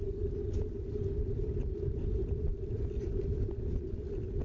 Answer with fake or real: fake